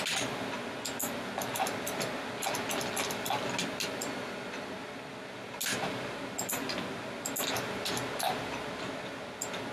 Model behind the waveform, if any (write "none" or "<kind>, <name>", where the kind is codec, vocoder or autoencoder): none